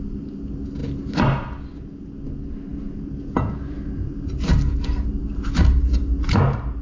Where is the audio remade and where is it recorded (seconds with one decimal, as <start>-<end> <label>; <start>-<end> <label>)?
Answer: 0.0-6.8 recorded